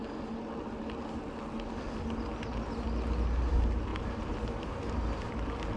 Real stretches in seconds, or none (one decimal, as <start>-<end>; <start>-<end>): 0.0-3.9; 5.3-5.8